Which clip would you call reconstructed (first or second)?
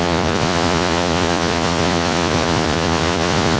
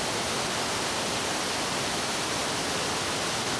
first